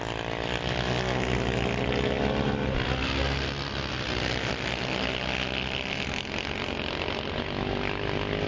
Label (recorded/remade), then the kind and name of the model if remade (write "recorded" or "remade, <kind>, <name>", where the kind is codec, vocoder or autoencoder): recorded